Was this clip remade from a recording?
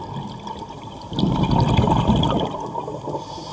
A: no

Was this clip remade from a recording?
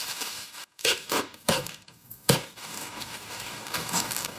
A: yes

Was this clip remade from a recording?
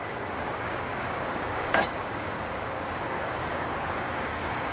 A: yes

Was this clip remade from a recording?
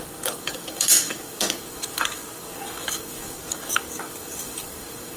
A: yes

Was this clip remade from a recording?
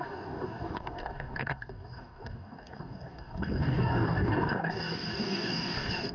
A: yes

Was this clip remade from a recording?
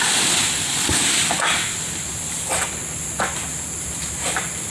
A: no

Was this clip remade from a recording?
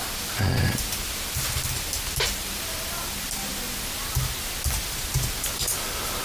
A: no